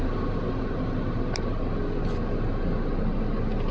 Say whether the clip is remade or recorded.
recorded